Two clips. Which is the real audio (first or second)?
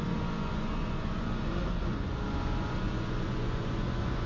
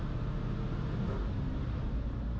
second